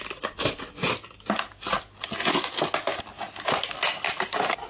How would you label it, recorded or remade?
recorded